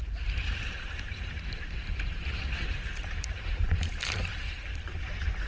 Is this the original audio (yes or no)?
no